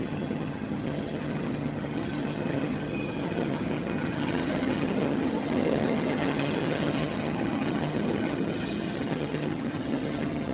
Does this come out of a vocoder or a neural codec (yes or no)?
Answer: yes